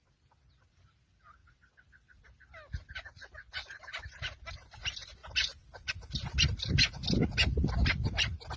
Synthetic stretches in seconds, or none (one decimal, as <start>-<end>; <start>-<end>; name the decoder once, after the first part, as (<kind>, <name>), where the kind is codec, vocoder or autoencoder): none

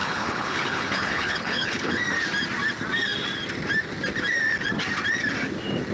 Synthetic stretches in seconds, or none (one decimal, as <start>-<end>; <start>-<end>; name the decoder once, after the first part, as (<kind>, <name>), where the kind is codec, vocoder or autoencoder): 0.0-2.0 (codec, HILCodec)